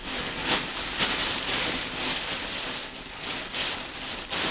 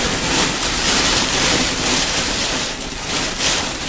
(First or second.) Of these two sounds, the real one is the first